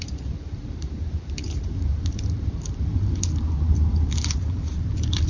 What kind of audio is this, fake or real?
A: fake